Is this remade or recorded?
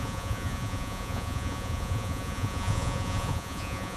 remade